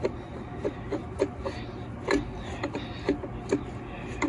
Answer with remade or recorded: recorded